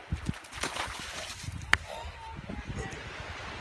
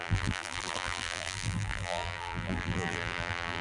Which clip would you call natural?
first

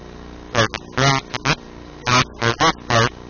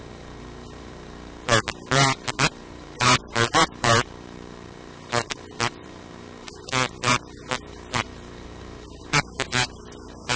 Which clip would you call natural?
first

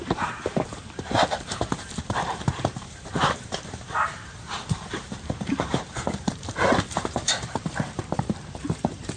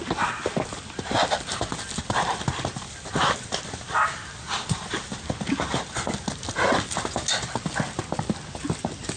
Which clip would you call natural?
second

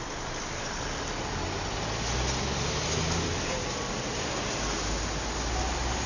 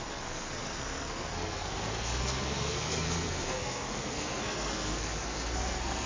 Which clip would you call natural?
first